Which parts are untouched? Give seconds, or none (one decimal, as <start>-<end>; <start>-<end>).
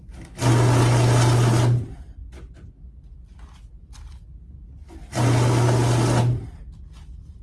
0.0-7.4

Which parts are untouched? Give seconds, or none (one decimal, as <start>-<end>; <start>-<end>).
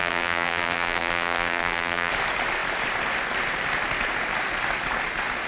2.1-5.5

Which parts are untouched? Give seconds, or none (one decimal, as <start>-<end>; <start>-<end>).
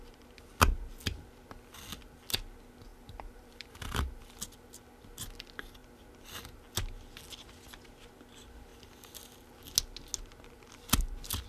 0.0-2.9; 4.2-11.5